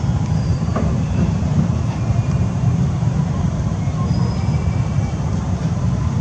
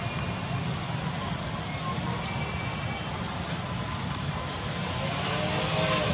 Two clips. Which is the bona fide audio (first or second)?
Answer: second